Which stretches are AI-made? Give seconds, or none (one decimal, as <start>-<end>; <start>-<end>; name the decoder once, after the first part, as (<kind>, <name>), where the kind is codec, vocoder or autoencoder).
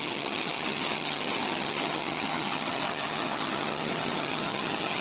0.0-5.0 (vocoder, HiFi-GAN)